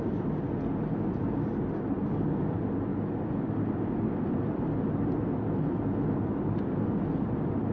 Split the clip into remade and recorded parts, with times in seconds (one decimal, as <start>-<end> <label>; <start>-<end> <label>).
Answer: 0.0-7.7 recorded